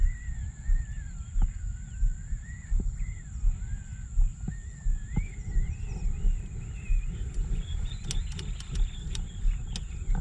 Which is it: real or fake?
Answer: real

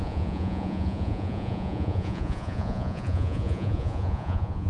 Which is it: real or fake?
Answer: fake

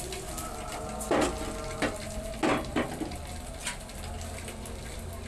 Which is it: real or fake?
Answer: real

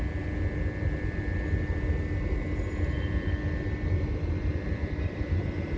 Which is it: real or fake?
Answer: real